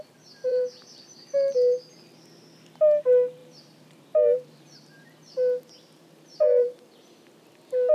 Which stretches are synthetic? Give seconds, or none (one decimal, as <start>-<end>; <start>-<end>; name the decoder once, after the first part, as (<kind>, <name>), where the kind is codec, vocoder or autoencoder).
0.5-1.9 (vocoder, BigVGAN v2); 3.4-6.9